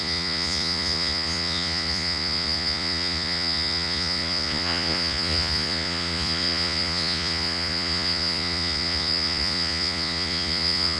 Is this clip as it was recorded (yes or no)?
no